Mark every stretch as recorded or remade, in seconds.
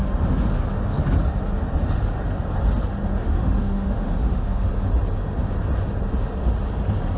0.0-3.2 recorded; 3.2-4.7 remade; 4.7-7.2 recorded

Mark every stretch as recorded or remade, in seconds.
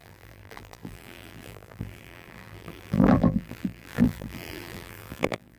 0.0-5.6 remade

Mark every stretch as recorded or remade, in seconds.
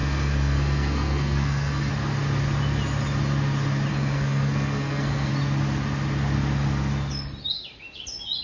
0.0-1.9 remade; 1.9-3.9 recorded; 3.9-5.3 remade; 5.3-8.4 recorded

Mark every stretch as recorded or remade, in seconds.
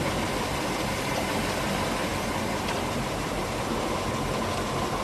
0.0-5.0 recorded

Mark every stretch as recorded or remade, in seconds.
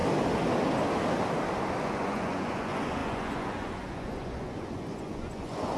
0.0-1.8 recorded; 1.8-5.8 remade